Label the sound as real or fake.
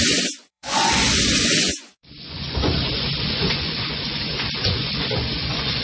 fake